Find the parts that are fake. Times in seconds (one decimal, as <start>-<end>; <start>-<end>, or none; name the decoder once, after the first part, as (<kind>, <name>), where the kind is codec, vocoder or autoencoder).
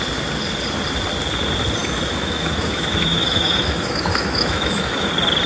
1.8-5.1 (autoencoder, DAC-VAE)